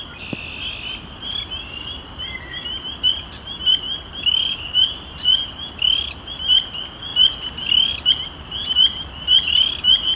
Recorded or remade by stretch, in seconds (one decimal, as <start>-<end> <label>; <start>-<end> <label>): 0.0-10.2 recorded